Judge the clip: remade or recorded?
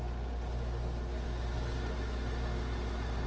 recorded